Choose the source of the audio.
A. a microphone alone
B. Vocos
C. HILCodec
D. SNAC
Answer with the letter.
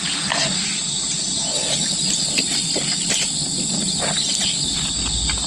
A